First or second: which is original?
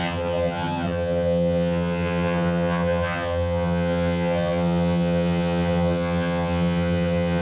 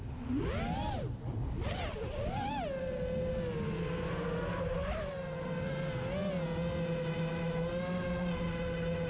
second